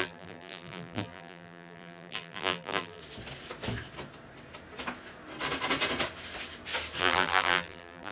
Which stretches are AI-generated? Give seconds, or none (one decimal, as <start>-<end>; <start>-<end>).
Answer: 0.0-3.0; 7.0-8.1